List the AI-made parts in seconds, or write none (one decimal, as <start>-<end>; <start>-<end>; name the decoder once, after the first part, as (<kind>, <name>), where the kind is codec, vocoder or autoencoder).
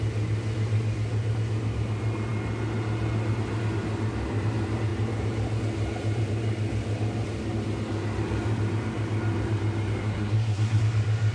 10.0-10.8 (codec, SNAC)